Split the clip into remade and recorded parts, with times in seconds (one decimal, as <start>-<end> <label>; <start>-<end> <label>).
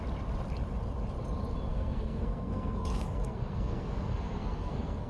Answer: 0.0-1.7 recorded; 1.7-5.1 remade